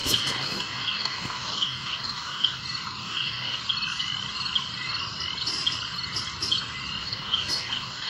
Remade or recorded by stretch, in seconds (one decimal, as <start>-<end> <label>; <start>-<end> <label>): 0.0-2.6 remade; 2.6-3.0 recorded; 3.0-3.6 remade; 3.6-7.0 recorded; 7.0-8.1 remade